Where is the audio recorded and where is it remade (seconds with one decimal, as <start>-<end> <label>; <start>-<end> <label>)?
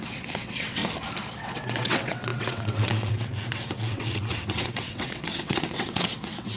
0.0-0.8 remade; 0.8-1.4 recorded; 1.4-6.6 remade